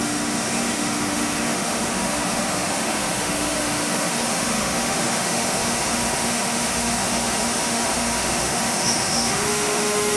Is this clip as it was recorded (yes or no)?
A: no